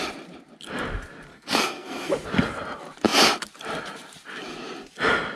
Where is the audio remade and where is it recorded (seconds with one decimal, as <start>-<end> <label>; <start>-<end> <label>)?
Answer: 0.0-1.3 recorded; 1.3-2.1 remade; 2.1-5.4 recorded